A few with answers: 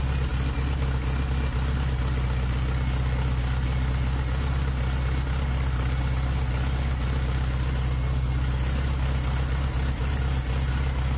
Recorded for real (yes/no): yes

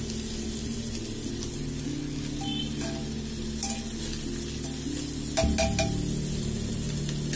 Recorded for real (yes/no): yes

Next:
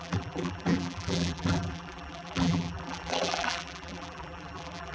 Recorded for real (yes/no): no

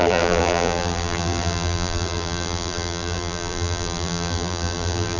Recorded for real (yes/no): no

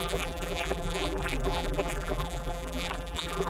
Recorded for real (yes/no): no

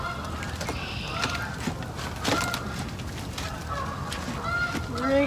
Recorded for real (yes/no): yes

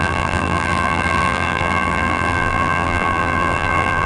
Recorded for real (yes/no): no